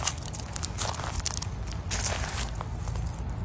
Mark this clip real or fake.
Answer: real